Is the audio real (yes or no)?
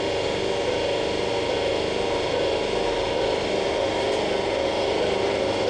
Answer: yes